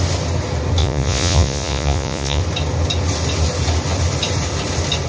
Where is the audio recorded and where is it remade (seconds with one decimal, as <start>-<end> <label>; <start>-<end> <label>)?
0.0-0.8 recorded; 0.8-2.4 remade; 2.4-5.1 recorded

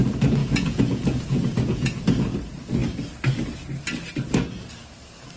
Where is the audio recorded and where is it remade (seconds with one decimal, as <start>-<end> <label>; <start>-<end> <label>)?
0.0-0.4 recorded; 0.4-2.0 remade; 2.0-5.4 recorded